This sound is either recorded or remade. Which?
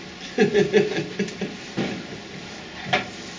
recorded